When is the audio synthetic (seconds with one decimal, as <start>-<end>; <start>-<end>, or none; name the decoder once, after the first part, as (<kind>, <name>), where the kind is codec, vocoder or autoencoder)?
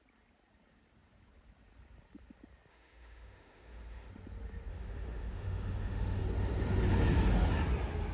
2.7-4.1 (autoencoder, DAC-VAE); 4.7-6.2